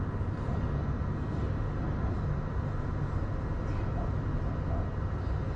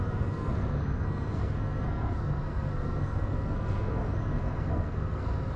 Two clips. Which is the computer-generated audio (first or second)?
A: second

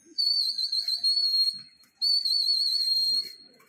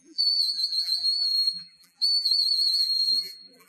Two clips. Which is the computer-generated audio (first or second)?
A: second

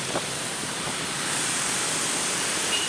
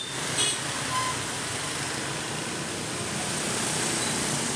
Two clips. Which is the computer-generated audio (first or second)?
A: first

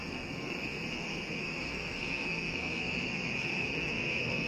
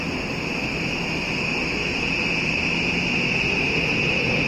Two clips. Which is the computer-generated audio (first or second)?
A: first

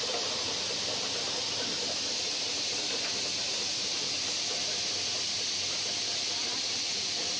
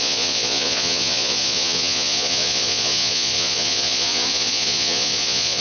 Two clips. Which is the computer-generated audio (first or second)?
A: second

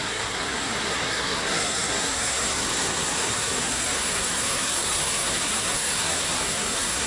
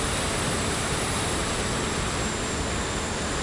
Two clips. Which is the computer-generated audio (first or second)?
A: first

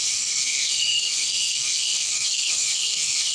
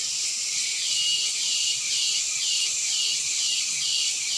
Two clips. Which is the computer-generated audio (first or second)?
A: first